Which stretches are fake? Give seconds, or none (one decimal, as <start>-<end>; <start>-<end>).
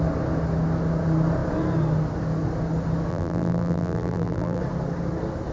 3.1-4.6